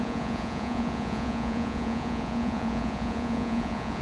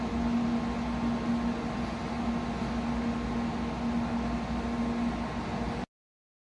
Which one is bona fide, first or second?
second